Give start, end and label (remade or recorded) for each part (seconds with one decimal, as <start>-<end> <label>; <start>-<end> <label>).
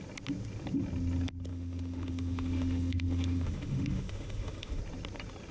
0.0-1.5 recorded; 1.5-4.8 remade; 4.8-5.5 recorded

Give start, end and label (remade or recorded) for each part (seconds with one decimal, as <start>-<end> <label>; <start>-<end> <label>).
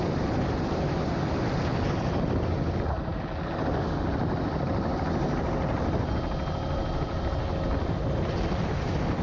0.0-9.2 recorded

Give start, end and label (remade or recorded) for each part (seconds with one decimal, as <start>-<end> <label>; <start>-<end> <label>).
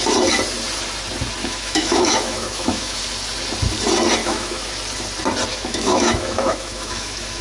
0.0-1.4 recorded; 1.4-3.0 remade; 3.0-4.2 recorded; 4.2-4.7 remade; 4.7-5.5 recorded; 5.5-7.4 remade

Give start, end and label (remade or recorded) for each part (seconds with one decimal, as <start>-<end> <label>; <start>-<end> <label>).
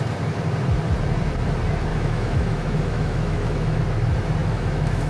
0.0-1.9 recorded; 1.9-3.8 remade; 3.8-4.4 recorded; 4.4-5.1 remade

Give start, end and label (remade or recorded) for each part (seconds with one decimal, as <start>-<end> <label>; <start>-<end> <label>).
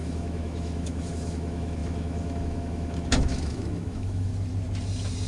0.0-4.3 remade; 4.3-5.3 recorded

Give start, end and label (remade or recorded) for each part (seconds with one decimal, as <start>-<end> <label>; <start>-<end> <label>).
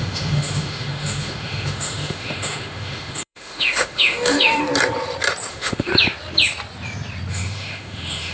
0.0-4.6 remade; 4.6-5.5 recorded; 5.5-5.9 remade; 5.9-7.3 recorded; 7.3-8.3 remade